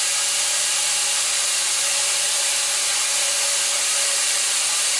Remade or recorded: recorded